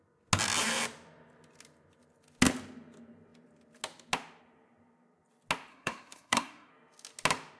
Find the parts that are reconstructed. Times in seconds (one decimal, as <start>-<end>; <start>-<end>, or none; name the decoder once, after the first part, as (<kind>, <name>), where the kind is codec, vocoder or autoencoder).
5.7-6.7 (codec, SNAC)